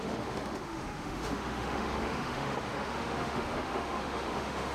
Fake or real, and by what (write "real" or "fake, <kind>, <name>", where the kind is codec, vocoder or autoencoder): fake, autoencoder, DAC-VAE